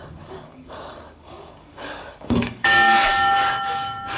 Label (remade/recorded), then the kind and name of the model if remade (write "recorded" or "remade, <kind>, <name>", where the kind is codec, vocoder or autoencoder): remade, codec, DAC